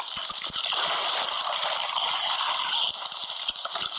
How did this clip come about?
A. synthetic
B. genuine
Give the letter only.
B